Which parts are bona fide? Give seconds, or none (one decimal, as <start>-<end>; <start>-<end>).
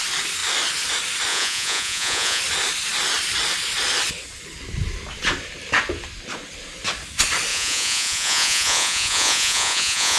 0.0-1.3; 2.4-7.5